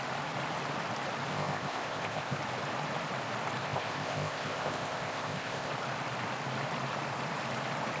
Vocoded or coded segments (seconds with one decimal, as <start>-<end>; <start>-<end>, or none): 1.3-2.4; 3.6-5.7